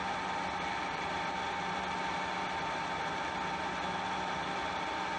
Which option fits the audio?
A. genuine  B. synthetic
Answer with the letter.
A